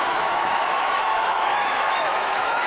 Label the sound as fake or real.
fake